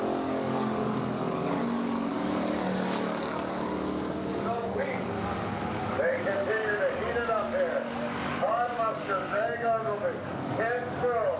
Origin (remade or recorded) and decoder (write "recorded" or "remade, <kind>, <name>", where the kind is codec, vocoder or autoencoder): remade, codec, DAC